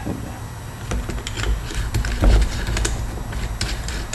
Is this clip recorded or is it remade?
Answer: recorded